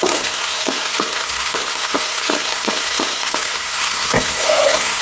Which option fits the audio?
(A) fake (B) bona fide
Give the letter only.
A